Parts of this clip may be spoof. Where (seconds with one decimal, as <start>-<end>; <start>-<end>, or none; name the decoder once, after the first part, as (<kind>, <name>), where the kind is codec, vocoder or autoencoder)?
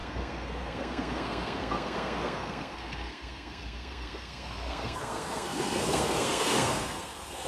0.0-7.5 (codec, SNAC)